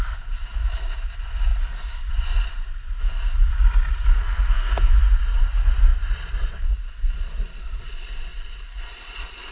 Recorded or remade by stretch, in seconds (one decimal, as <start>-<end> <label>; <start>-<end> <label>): 0.0-4.2 recorded; 4.2-5.0 remade; 5.0-9.5 recorded